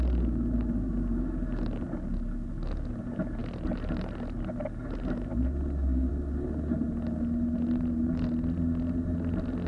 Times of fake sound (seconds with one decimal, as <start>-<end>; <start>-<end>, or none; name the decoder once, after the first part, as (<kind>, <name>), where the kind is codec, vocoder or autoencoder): none